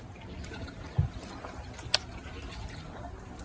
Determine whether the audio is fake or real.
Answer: real